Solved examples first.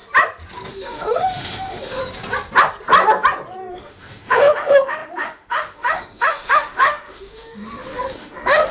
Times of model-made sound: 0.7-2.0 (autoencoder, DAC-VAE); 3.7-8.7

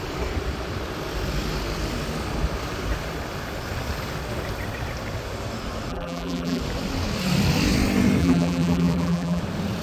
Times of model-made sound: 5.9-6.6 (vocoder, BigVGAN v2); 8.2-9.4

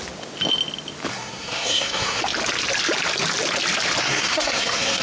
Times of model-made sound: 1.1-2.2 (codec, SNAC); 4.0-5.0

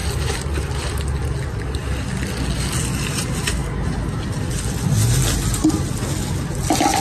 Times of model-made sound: none

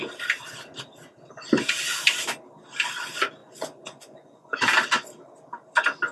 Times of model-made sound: 3.4-4.5 (vocoder, Vocos)

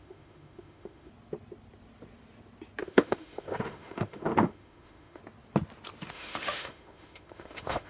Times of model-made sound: 0.0-1.1 (autoencoder, DAC-VAE); 2.8-5.2; 6.1-7.9